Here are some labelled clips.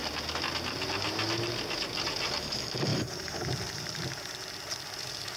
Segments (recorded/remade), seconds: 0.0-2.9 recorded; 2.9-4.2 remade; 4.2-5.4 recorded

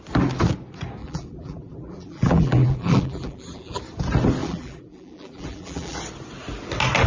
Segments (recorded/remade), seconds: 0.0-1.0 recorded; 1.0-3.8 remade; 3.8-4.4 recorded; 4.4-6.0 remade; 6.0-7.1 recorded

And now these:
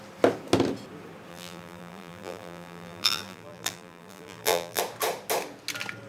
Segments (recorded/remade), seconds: 0.0-1.3 recorded; 1.3-4.8 remade; 4.8-6.1 recorded

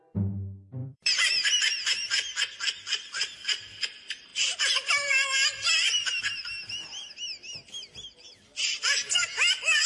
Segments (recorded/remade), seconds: 0.0-0.8 recorded; 0.8-1.6 remade; 1.6-4.3 recorded; 4.3-6.2 remade; 6.2-9.9 recorded

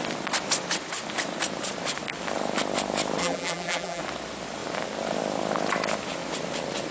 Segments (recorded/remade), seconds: 0.0-3.2 recorded; 3.2-4.0 remade; 4.0-6.9 recorded